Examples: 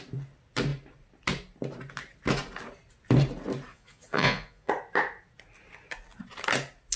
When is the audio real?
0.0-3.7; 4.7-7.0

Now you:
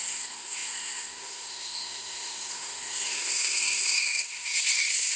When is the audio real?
none

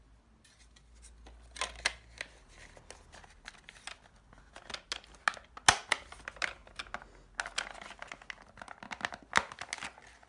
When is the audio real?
0.0-10.3

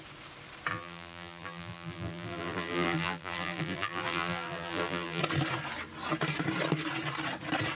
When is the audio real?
0.0-0.7; 5.2-7.7

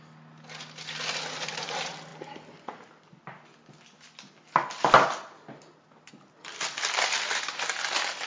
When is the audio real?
0.0-8.3

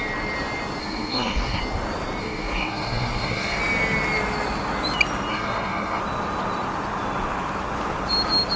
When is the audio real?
0.0-0.8; 1.6-2.2; 3.6-5.3; 6.0-8.6